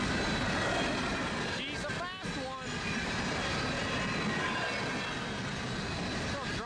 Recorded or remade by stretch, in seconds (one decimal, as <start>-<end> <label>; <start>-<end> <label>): 0.0-6.7 recorded